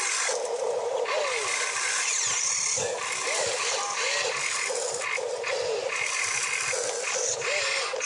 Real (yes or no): yes